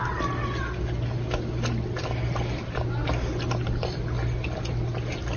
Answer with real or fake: real